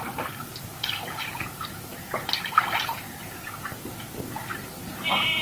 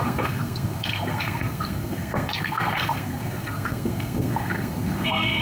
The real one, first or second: first